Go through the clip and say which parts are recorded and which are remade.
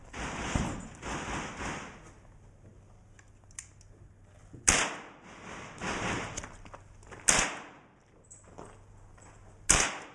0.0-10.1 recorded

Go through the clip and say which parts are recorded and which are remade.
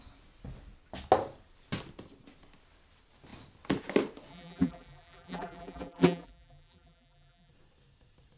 0.0-4.3 recorded; 4.3-7.5 remade; 7.5-8.4 recorded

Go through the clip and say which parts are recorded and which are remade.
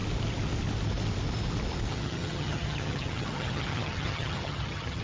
0.0-1.9 recorded; 1.9-5.0 remade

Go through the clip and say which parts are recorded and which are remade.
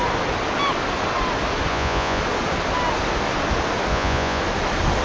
0.0-1.7 recorded; 1.7-2.2 remade; 2.2-3.9 recorded; 3.9-4.4 remade; 4.4-5.0 recorded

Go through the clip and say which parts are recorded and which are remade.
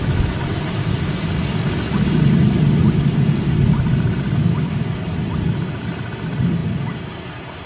0.0-7.7 recorded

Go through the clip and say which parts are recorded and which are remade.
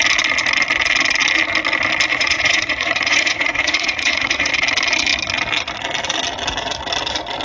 0.0-2.1 recorded; 2.1-4.5 remade; 4.5-7.4 recorded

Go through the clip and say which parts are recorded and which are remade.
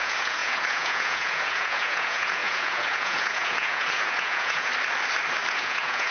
0.0-4.7 remade; 4.7-5.5 recorded; 5.5-6.1 remade